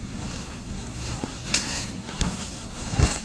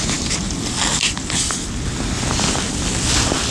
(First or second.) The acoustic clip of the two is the second